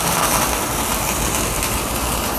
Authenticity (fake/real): real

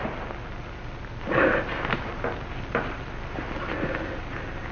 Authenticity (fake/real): real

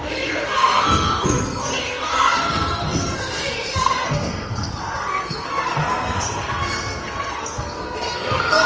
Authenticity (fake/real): fake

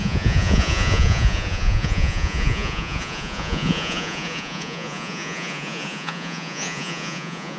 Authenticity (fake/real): fake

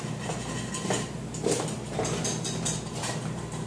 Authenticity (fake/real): real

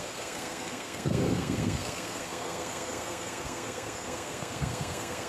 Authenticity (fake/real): fake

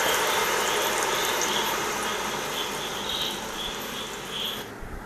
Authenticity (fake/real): real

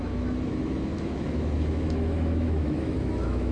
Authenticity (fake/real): fake